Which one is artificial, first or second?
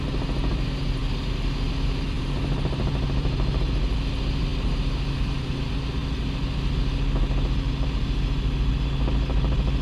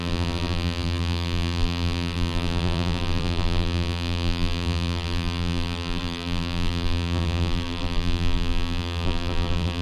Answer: second